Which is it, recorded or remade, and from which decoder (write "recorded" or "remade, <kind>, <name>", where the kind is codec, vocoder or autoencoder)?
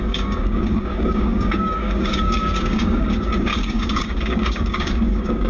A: remade, codec, DAC